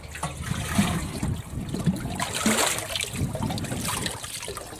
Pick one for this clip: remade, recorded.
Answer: recorded